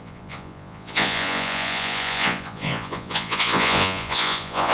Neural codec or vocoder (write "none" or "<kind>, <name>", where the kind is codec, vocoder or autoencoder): vocoder, Vocos